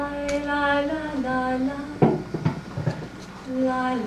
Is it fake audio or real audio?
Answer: real